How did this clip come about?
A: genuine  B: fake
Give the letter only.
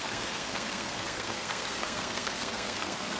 B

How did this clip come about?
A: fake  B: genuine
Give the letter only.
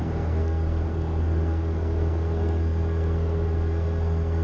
A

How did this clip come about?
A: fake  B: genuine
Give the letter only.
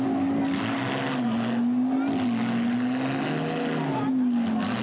B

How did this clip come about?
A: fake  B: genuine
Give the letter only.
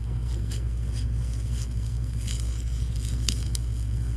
A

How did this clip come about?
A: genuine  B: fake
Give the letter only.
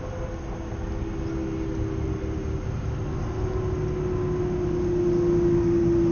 A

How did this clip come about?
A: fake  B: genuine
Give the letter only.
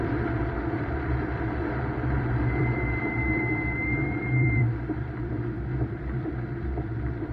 A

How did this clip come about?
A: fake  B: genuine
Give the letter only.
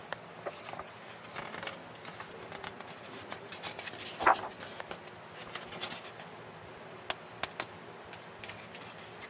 B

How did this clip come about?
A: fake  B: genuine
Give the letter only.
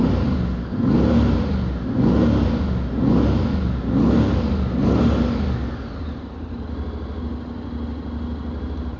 B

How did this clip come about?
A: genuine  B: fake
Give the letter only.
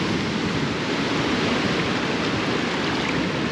A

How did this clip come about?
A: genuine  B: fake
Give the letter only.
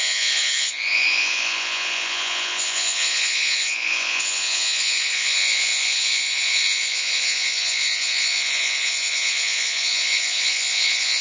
B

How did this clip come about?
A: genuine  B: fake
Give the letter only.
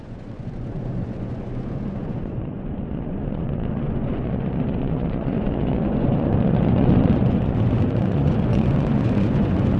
B